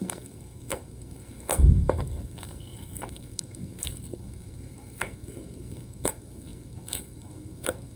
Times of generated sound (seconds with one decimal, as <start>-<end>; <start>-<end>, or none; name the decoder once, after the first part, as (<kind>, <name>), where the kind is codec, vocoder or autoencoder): 0.0-8.0 (codec, SNAC)